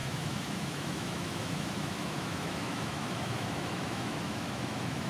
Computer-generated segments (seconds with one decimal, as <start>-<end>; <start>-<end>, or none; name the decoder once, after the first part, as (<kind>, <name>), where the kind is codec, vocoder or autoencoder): 0.0-5.1 (autoencoder, DAC-VAE)